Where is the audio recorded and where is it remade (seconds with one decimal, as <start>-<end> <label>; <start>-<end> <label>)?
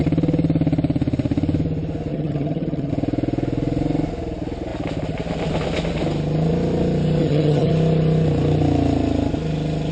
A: 0.0-2.1 recorded; 2.1-2.9 remade; 2.9-7.2 recorded; 7.2-7.7 remade; 7.7-9.9 recorded